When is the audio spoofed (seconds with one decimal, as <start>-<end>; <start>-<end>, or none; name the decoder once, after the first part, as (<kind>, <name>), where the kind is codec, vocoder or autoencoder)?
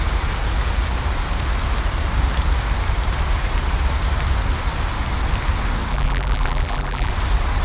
5.9-7.1 (vocoder, BigVGAN v2)